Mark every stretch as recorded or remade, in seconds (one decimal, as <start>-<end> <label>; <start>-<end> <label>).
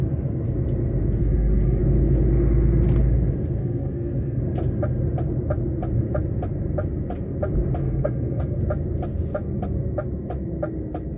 0.0-1.2 recorded; 1.2-1.8 remade; 1.8-3.6 recorded; 3.6-4.4 remade; 4.4-7.8 recorded; 7.8-8.6 remade; 8.6-11.2 recorded